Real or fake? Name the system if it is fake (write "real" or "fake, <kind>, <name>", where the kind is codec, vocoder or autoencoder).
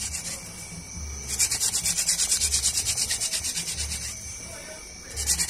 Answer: real